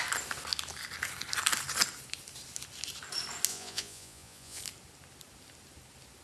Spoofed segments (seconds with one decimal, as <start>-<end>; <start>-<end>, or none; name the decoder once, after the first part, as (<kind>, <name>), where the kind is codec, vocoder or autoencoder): 3.5-4.6 (vocoder, Vocos)